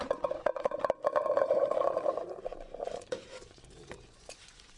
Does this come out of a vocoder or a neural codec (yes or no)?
yes